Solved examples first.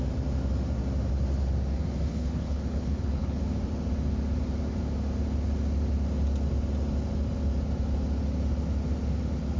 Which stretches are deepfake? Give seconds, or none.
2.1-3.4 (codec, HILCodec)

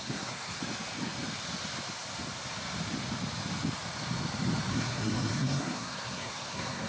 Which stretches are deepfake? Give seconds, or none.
0.0-0.6 (codec, SNAC); 4.7-6.9

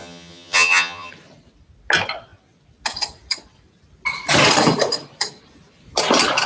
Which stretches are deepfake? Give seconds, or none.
0.0-1.1 (vocoder, HiFi-GAN)

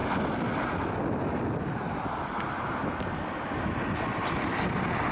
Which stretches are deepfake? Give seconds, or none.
none